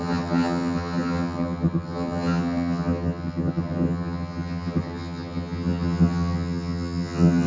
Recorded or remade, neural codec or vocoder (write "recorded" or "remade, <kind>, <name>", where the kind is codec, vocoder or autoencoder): remade, vocoder, HiFi-GAN